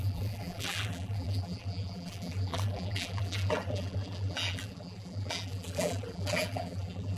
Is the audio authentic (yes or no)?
no